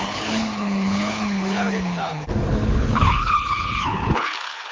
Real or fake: fake